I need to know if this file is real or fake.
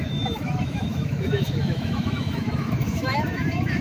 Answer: fake